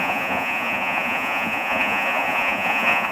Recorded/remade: remade